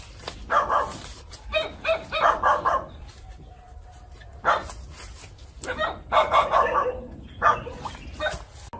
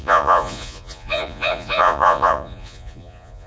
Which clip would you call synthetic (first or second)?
second